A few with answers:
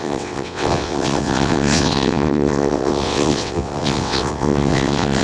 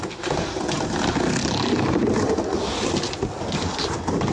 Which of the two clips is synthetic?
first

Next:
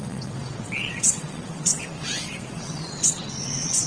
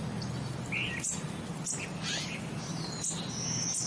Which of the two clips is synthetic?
first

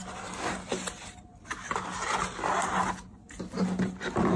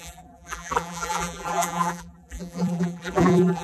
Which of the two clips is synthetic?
second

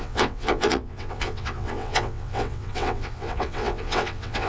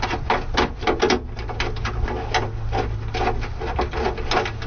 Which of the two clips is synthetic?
first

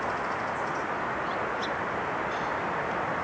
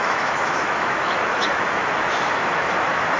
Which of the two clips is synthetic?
second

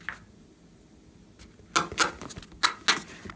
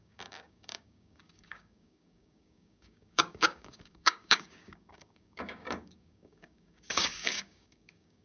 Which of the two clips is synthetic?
second